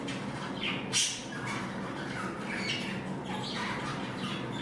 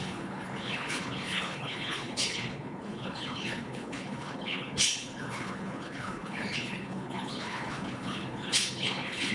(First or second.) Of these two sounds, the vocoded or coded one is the second